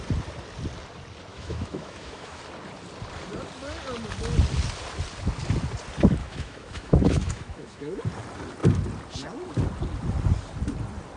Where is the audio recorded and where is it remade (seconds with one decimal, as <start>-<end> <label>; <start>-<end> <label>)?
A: 0.0-1.3 recorded; 1.3-2.4 remade; 2.4-6.2 recorded; 6.2-8.0 remade; 8.0-11.2 recorded